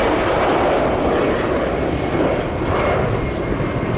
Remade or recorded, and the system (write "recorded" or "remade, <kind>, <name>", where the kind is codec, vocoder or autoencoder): recorded